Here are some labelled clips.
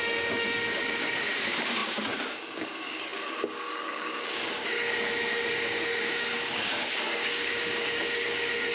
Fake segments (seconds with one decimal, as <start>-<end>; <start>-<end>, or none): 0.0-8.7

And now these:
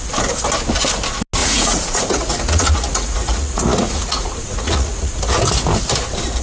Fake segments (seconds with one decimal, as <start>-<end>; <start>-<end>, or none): 1.4-5.2

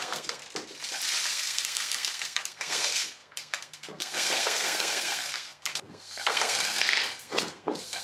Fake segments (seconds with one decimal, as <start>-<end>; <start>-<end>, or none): 0.0-0.4; 1.3-8.0